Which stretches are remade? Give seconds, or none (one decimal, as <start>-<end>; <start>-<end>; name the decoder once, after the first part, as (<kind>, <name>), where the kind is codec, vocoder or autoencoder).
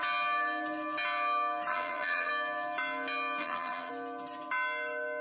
1.7-2.3 (vocoder, BigVGAN v2); 3.4-3.9